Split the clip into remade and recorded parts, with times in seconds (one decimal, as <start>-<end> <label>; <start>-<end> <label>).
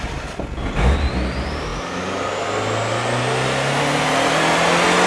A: 0.0-5.1 recorded